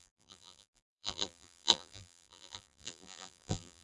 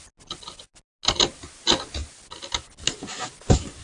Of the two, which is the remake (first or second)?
first